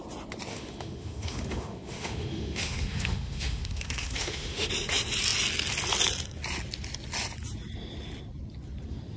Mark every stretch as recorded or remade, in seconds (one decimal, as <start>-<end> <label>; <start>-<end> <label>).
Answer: 0.0-0.5 recorded; 0.5-4.7 remade; 4.7-9.2 recorded